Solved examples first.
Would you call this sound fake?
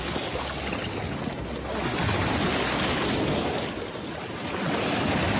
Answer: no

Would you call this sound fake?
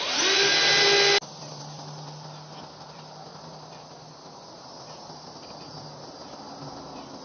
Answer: no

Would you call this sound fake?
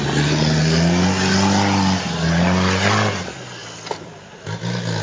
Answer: no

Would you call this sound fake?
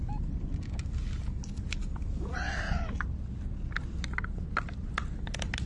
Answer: no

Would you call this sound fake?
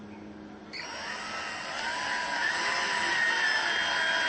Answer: no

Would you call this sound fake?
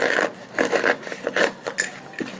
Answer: no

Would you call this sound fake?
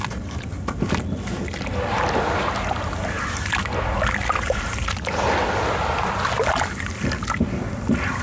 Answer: no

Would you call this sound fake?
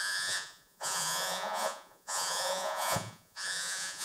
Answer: yes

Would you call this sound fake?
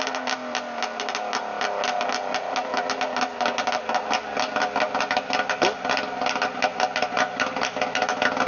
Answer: no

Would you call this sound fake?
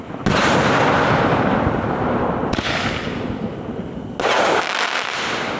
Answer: no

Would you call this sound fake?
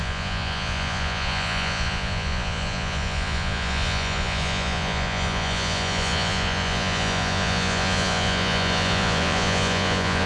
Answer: yes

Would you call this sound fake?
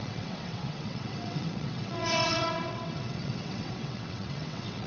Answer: yes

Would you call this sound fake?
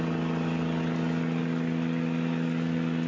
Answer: no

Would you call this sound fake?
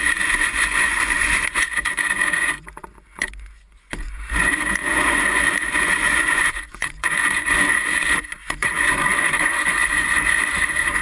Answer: yes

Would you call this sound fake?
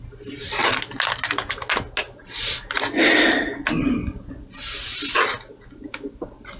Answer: no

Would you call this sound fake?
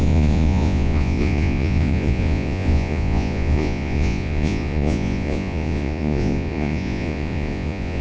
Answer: yes